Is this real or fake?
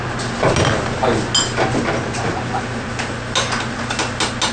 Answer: real